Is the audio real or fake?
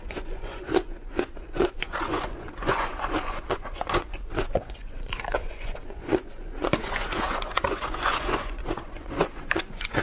fake